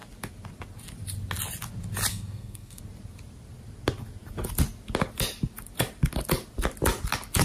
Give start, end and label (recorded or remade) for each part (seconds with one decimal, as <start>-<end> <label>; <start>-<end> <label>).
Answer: 0.0-2.1 recorded; 2.1-2.8 remade; 2.8-7.4 recorded